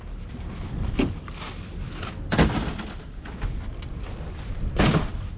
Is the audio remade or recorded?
recorded